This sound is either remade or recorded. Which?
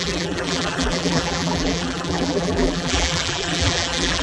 remade